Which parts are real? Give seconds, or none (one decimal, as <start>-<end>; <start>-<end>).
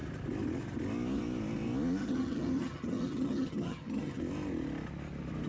0.0-2.0; 4.2-5.5